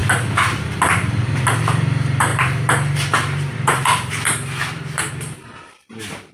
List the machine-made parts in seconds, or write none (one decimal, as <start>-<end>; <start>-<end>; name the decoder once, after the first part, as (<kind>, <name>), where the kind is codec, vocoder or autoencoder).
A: 2.3-5.1 (vocoder, BigVGAN v2)